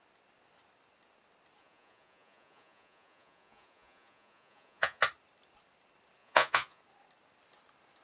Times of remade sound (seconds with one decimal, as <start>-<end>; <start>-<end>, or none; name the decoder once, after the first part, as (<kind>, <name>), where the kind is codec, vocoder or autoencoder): 1.6-5.0 (vocoder, Vocos); 6.2-6.8